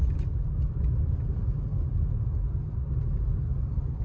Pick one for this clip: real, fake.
real